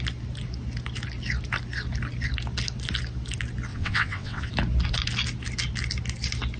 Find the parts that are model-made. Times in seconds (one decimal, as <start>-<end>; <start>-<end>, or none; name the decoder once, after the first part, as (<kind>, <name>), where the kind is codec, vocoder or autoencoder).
3.7-4.5 (vocoder, WaveNeXt)